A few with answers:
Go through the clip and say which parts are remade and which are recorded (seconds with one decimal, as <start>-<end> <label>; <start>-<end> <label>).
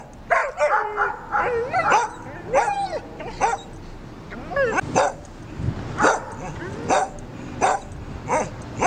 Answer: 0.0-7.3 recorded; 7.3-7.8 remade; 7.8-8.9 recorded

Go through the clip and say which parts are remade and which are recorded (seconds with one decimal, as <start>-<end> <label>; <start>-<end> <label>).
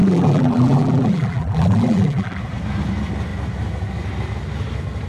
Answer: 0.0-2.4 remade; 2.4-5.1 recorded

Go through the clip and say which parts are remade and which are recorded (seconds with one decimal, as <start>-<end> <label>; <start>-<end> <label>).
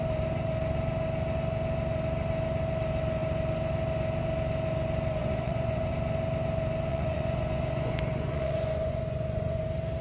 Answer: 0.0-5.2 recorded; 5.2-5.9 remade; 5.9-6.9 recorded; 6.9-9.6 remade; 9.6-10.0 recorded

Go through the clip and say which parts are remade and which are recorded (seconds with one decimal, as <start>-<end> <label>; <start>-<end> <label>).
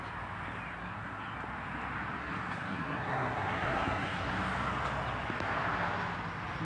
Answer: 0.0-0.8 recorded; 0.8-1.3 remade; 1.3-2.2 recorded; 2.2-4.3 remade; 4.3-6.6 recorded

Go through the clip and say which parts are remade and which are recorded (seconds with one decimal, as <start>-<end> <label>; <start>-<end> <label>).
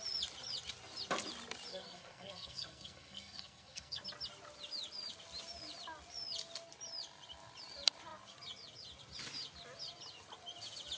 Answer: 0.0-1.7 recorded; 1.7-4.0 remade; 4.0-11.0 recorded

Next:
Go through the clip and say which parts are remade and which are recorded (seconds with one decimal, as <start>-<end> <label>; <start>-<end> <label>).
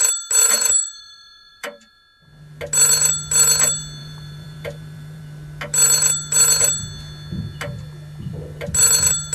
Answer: 0.0-0.4 recorded; 0.4-2.0 remade; 2.0-4.0 recorded; 4.0-5.2 remade; 5.2-9.3 recorded